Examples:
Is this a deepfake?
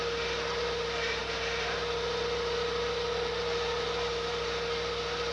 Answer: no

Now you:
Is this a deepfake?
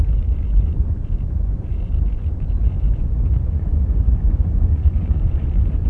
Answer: yes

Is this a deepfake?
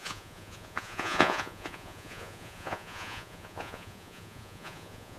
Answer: yes